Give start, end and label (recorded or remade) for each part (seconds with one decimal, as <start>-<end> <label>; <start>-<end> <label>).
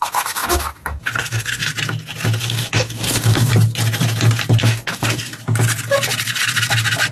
0.0-1.7 remade; 1.7-2.4 recorded; 2.4-3.5 remade; 3.5-4.6 recorded; 4.6-5.3 remade; 5.3-7.1 recorded